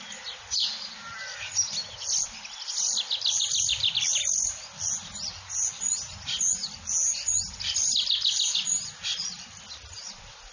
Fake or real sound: real